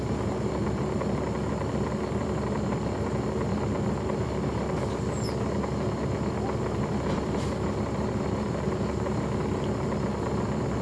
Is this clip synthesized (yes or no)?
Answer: no